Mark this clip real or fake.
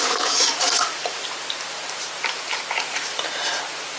fake